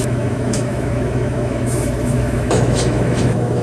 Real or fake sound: fake